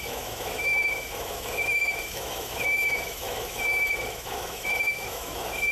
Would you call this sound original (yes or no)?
no